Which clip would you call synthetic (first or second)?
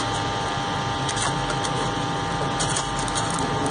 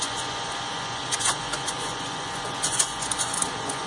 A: second